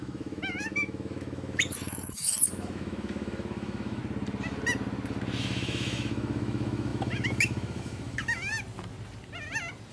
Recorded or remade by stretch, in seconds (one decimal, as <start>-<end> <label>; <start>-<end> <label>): 0.0-4.0 remade; 4.0-5.4 recorded; 5.4-8.5 remade; 8.5-9.9 recorded